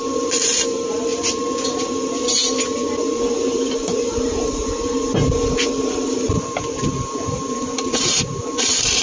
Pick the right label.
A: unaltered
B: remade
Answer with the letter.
B